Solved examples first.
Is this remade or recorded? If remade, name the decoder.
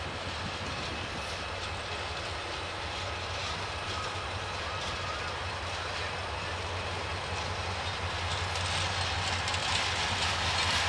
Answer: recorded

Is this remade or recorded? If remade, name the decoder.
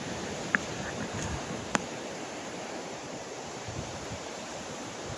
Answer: remade, vocoder, BigVGAN v2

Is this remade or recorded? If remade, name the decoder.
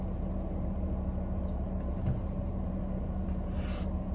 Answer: recorded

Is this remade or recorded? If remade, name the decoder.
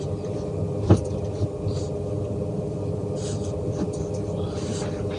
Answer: remade, vocoder, BigVGAN v2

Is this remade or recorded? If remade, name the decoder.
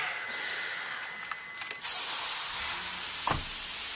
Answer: recorded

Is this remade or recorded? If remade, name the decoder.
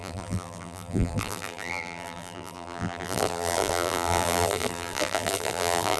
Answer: remade, vocoder, BigVGAN v2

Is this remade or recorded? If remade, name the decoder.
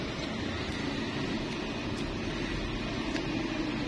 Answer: recorded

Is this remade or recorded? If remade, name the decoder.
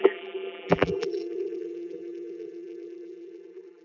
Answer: remade, vocoder, BigVGAN v2